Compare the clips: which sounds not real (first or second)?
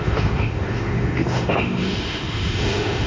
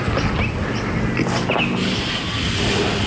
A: first